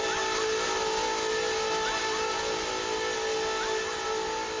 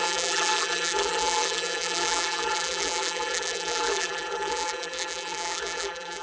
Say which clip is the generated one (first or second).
second